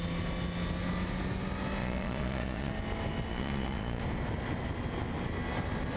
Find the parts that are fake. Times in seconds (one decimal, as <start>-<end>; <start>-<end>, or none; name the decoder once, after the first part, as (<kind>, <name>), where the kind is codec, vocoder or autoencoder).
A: 1.8-2.7 (vocoder, Vocos); 3.3-4.0